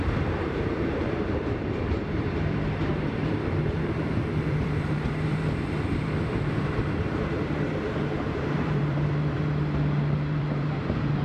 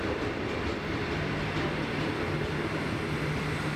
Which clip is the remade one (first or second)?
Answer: first